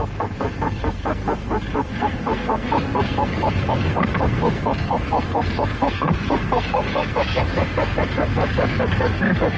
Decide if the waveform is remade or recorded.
remade